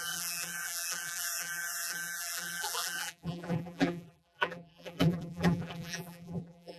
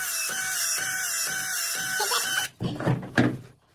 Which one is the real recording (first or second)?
second